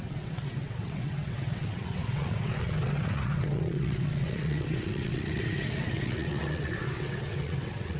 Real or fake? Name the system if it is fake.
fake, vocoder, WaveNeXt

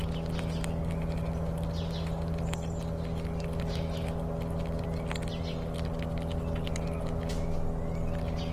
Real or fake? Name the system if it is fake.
real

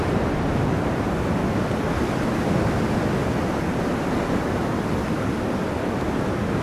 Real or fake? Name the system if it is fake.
real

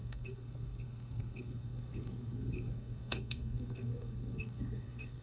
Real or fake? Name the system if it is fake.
fake, codec, SNAC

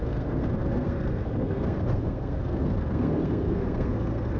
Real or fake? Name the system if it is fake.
fake, codec, SNAC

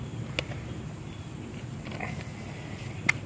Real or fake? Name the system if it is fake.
real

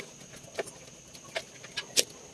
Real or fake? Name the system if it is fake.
real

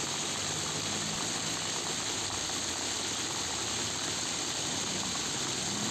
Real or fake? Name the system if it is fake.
real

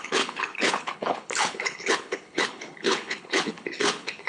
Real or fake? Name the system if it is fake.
fake, codec, HILCodec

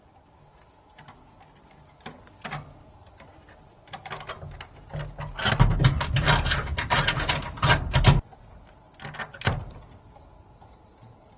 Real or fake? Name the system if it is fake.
real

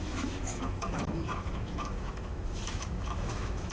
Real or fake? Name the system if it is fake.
fake, autoencoder, DAC-VAE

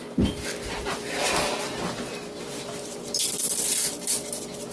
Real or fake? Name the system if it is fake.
real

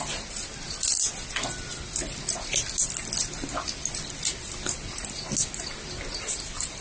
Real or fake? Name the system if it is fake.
real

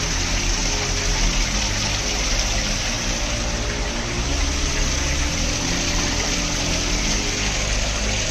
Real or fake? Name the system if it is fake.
real